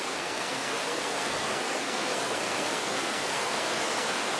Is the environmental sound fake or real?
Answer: fake